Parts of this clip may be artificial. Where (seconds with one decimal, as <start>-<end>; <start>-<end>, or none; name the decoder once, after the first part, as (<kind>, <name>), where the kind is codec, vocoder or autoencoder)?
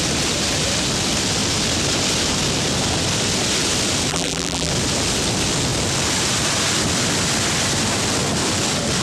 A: 4.1-4.7 (vocoder, BigVGAN v2)